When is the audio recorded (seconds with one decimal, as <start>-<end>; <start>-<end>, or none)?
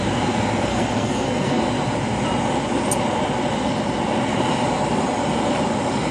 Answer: 0.0-0.7; 1.6-6.1